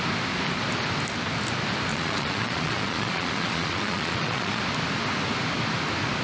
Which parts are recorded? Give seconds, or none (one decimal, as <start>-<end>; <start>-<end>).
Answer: 0.0-1.9; 4.6-6.2